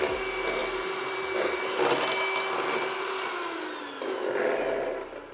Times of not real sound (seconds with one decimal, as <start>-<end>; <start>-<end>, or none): none